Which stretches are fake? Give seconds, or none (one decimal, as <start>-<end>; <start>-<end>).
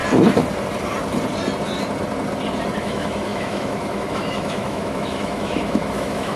2.8-6.4